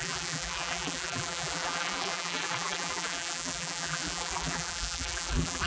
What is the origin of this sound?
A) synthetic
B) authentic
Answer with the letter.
A